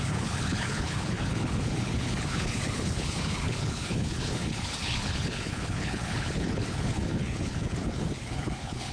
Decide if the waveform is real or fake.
fake